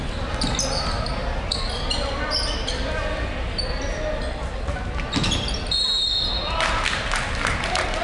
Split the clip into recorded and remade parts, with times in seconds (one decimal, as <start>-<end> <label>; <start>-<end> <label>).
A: 0.0-8.0 recorded